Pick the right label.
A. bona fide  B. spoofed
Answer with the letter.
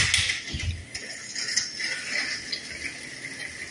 A